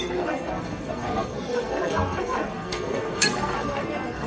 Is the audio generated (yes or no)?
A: yes